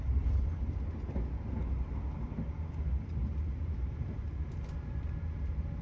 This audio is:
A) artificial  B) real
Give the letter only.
B